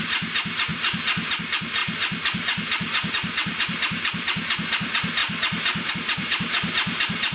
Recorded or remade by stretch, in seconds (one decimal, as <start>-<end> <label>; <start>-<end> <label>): 0.0-5.2 remade; 5.2-5.9 recorded; 5.9-7.3 remade